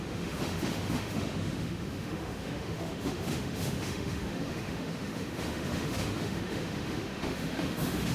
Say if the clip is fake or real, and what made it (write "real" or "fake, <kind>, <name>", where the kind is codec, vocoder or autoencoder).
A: fake, autoencoder, DAC-VAE